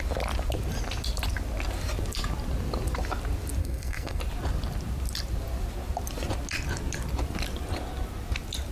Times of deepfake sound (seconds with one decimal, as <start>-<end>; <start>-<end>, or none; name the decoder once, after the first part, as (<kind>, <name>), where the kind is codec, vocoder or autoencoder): 3.6-4.2 (codec, SNAC)